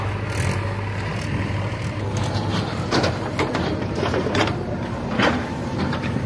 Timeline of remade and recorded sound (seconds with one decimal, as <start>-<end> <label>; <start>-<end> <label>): 0.0-2.5 recorded; 2.5-6.3 remade